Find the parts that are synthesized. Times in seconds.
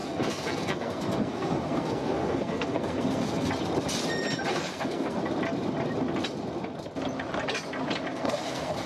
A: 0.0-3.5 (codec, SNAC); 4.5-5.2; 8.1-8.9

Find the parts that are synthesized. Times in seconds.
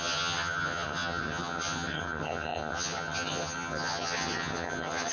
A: 0.0-5.1 (vocoder, HiFi-GAN)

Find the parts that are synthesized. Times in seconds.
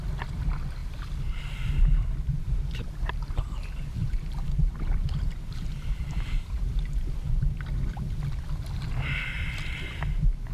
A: 4.0-7.6 (vocoder, BigVGAN v2)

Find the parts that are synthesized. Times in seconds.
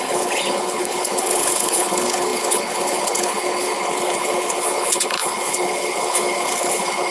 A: 0.0-7.1 (codec, HILCodec)